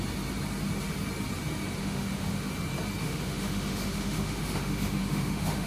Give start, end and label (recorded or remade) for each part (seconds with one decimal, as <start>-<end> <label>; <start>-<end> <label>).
0.0-1.8 recorded; 1.8-2.5 remade; 2.5-3.0 recorded; 3.0-5.7 remade